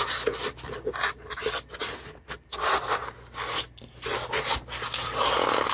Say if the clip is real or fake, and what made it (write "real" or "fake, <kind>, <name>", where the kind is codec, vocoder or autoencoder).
real